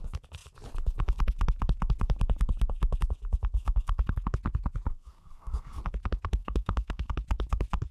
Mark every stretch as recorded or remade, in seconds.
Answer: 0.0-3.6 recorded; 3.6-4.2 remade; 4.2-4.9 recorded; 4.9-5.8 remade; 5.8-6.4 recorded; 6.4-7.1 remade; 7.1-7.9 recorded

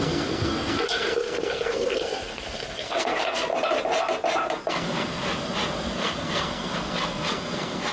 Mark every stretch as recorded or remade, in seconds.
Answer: 0.0-3.5 remade; 3.5-4.7 recorded; 4.7-5.2 remade; 5.2-5.9 recorded; 5.9-7.9 remade

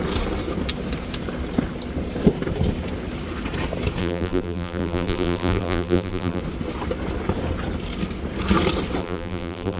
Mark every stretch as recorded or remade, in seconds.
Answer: 0.0-4.0 recorded; 4.0-6.4 remade; 6.4-9.0 recorded; 9.0-9.8 remade